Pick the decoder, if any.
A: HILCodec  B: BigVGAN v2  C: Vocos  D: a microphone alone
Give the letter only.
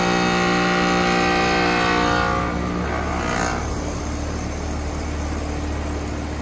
D